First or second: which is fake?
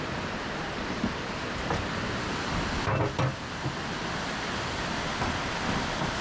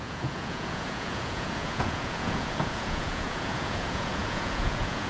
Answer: second